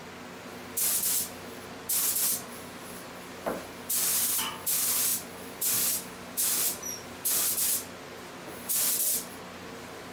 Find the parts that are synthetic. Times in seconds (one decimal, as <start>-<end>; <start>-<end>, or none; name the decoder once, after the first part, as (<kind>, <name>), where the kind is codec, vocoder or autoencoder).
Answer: none